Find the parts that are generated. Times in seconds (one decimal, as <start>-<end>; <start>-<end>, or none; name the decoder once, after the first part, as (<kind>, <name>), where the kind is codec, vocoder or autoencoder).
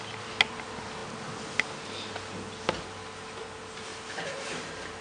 3.9-5.0 (vocoder, BigVGAN v2)